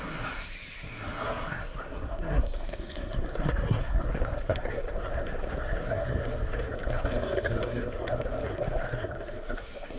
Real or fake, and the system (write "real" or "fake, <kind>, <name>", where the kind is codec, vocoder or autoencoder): fake, codec, SNAC